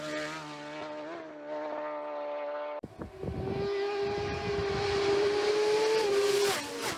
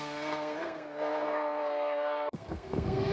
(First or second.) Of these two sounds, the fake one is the second